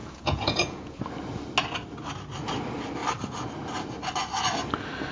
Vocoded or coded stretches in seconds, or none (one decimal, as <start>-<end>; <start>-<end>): 0.0-1.0